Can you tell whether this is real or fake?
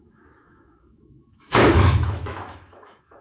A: fake